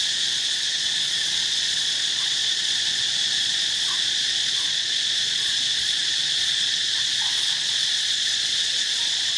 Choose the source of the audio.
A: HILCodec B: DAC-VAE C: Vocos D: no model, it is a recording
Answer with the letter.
C